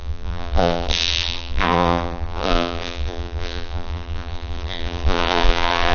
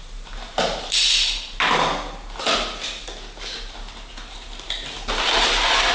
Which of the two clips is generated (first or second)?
first